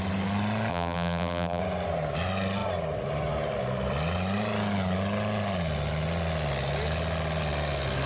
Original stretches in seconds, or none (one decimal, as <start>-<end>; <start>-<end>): 0.0-0.7; 1.6-8.1